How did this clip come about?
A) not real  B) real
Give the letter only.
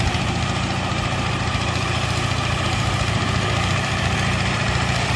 A